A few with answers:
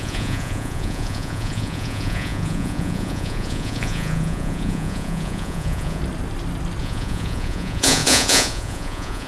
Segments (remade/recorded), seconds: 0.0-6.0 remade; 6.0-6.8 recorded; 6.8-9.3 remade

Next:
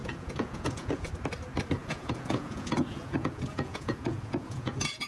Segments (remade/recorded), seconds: 0.0-1.1 remade; 1.1-1.8 recorded; 1.8-5.1 remade

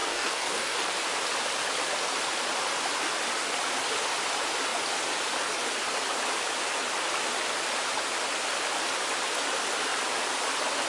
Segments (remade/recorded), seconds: 0.0-0.9 remade; 0.9-10.9 recorded

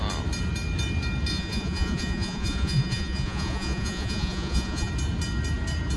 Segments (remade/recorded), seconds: 0.0-1.3 recorded; 1.3-4.9 remade; 4.9-6.0 recorded

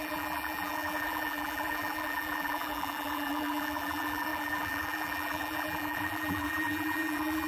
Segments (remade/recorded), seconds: 0.0-7.5 remade

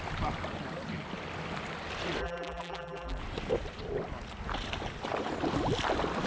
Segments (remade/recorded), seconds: 0.0-2.2 recorded; 2.2-3.2 remade; 3.2-6.3 recorded

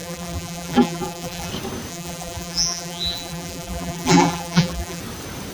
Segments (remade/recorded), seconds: 0.0-1.5 remade; 1.5-1.9 recorded; 1.9-5.0 remade; 5.0-5.5 recorded

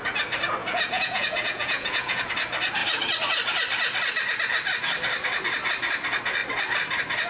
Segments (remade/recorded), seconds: 0.0-0.6 recorded; 0.6-2.3 remade; 2.3-7.3 recorded